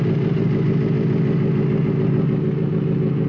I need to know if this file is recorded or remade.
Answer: recorded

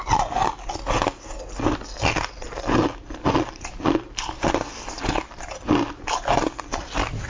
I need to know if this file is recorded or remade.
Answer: recorded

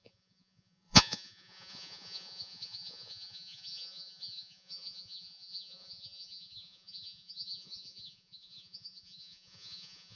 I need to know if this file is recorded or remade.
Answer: remade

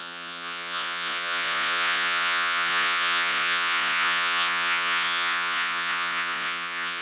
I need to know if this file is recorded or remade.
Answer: remade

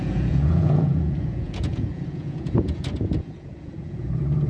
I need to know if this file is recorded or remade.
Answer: remade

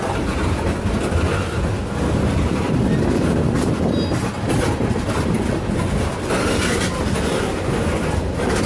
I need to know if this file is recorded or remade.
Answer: recorded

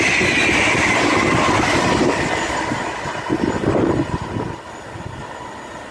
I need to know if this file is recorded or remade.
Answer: recorded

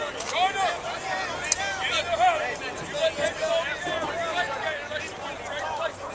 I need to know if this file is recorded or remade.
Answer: recorded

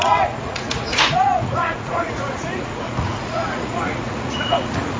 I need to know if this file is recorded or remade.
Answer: remade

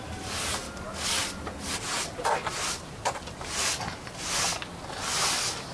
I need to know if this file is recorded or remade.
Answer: recorded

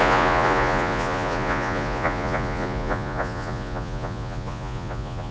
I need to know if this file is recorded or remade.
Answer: remade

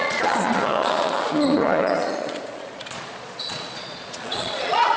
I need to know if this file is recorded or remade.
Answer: remade